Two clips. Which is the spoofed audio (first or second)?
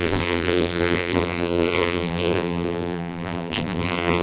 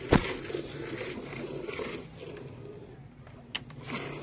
first